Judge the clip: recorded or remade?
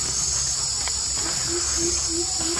remade